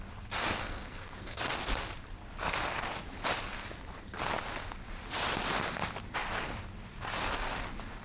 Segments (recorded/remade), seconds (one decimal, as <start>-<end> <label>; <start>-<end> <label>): 0.0-0.6 recorded; 0.6-1.4 remade; 1.4-8.0 recorded